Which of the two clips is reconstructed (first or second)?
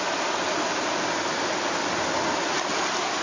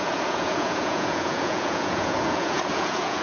second